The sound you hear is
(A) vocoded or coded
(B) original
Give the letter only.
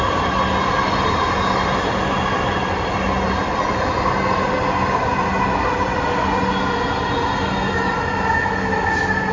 B